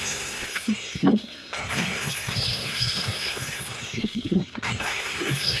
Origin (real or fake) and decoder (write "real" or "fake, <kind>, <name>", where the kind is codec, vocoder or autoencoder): fake, codec, SNAC